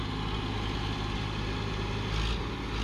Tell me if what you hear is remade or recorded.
recorded